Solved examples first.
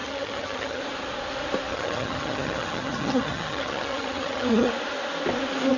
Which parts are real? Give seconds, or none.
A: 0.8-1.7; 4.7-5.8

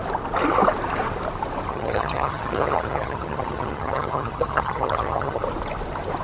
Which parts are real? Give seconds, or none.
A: 0.0-1.7; 5.4-6.2

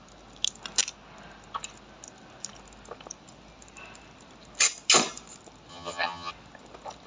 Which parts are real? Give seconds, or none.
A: 0.0-5.7; 6.3-7.1

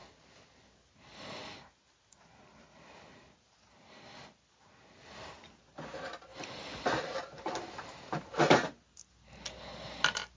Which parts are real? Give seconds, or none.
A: 0.0-10.4

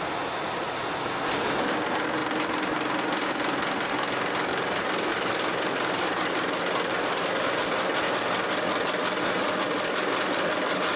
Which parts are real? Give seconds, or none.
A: 0.0-11.0

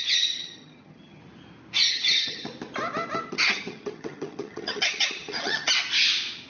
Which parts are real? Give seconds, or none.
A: 1.2-1.9; 2.5-3.3; 5.7-6.5